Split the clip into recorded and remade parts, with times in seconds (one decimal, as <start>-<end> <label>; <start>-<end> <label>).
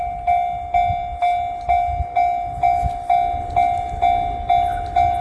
0.0-5.2 recorded